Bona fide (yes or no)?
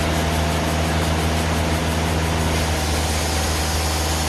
yes